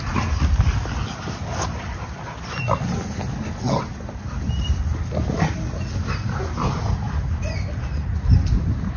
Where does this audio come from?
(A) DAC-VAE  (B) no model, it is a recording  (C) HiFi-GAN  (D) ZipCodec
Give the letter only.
B